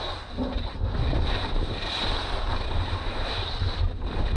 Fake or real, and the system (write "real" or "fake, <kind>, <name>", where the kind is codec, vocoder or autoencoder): real